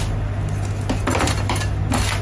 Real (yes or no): yes